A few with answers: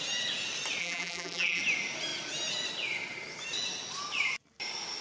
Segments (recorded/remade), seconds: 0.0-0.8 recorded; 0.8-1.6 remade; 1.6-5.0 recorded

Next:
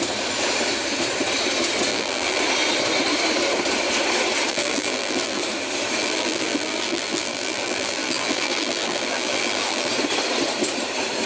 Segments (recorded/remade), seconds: 0.0-1.9 recorded; 1.9-2.4 remade; 2.4-4.5 recorded; 4.5-5.4 remade; 5.4-6.0 recorded; 6.0-9.9 remade; 9.9-11.3 recorded

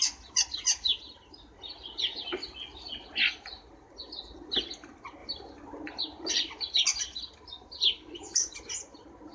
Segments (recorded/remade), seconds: 0.0-0.9 recorded; 0.9-1.6 remade; 1.6-5.2 recorded; 5.2-6.0 remade; 6.0-9.3 recorded

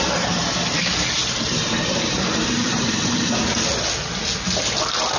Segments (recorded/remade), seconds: 0.0-1.2 recorded; 1.2-3.2 remade; 3.2-5.2 recorded